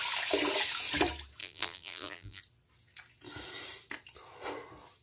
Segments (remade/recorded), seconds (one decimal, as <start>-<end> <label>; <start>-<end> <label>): 0.0-1.4 recorded; 1.4-2.4 remade; 2.4-5.0 recorded